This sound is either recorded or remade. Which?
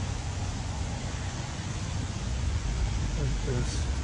remade